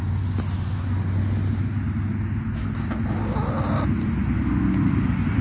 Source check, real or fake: real